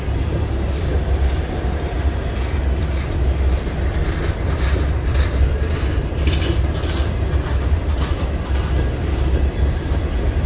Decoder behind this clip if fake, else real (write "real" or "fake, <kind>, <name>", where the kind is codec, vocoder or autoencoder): real